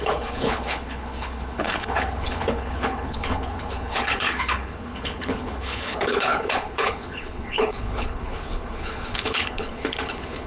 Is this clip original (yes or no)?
no